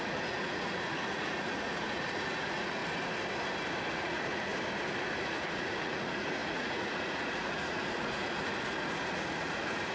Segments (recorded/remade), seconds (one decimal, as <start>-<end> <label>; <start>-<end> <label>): 0.0-2.8 remade; 2.8-3.9 recorded; 3.9-4.5 remade; 4.5-5.2 recorded; 5.2-9.9 remade